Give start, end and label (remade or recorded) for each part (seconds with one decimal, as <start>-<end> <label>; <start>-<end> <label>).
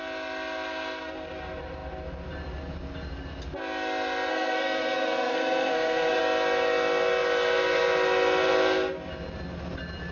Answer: 0.0-4.3 recorded; 4.3-6.2 remade; 6.2-10.1 recorded